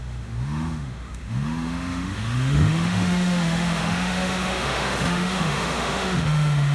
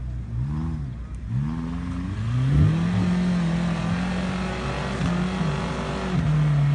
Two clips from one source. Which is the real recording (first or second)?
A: second